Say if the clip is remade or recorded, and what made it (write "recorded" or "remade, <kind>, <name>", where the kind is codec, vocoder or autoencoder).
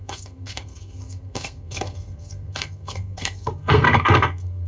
remade, codec, SNAC